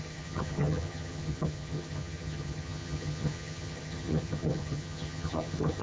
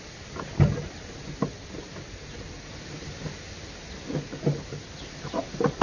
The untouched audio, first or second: second